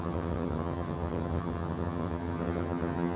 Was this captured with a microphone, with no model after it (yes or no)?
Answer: no